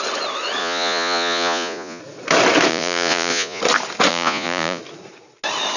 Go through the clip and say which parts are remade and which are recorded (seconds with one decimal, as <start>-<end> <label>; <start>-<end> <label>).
0.0-0.6 recorded; 0.6-2.0 remade; 2.0-2.7 recorded; 2.7-3.6 remade; 3.6-4.1 recorded; 4.1-4.8 remade; 4.8-5.8 recorded

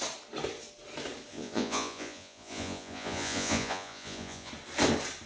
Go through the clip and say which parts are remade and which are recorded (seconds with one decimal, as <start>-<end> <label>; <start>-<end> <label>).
0.0-1.3 recorded; 1.3-4.5 remade; 4.5-5.3 recorded

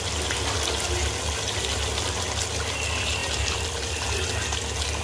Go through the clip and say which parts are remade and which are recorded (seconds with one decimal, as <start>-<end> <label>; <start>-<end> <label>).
0.0-5.0 recorded

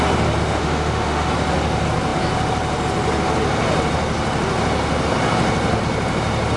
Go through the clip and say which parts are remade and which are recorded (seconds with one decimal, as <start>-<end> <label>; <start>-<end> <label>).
0.0-0.4 recorded; 0.4-1.3 remade; 1.3-6.6 recorded